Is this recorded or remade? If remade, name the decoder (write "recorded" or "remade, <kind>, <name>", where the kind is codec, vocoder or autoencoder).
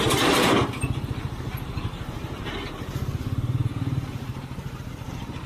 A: remade, vocoder, BigVGAN v2